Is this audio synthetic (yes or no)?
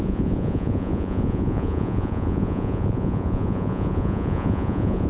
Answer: yes